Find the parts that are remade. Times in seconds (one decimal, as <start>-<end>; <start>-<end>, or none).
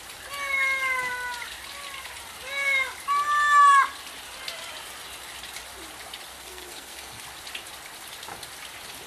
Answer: 6.3-7.2